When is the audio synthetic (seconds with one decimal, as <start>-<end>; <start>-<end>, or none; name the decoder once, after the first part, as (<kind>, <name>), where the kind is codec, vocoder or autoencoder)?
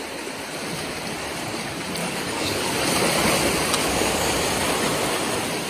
2.0-2.7 (codec, DAC); 3.8-4.3